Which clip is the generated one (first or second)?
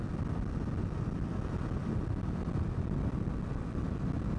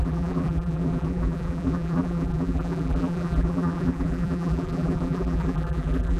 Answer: second